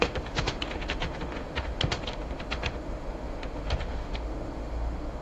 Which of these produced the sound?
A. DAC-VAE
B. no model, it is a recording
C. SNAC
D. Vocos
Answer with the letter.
A